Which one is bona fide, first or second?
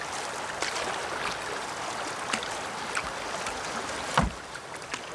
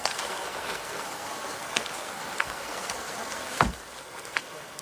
first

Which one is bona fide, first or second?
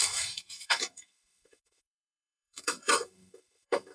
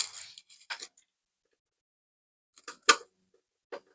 second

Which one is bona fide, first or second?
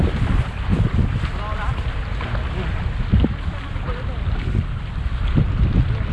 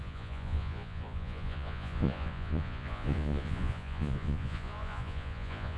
first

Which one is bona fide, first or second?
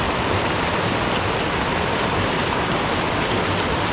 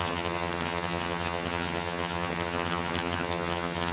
first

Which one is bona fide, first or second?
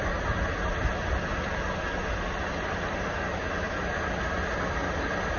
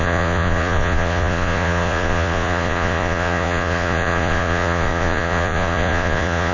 first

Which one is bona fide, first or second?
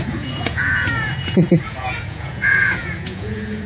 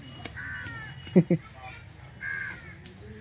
second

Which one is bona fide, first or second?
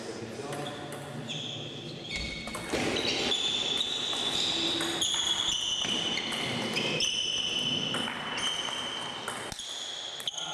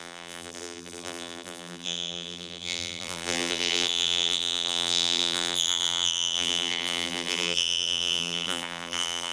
first